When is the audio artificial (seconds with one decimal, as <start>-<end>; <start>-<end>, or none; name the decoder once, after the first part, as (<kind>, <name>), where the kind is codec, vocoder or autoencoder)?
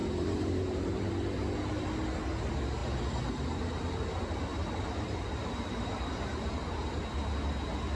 0.0-1.1 (vocoder, BigVGAN v2); 4.5-7.0